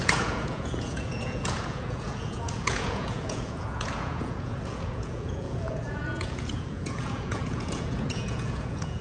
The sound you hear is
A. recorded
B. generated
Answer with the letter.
B